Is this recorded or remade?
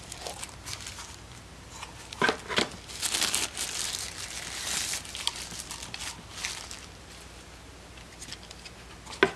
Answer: recorded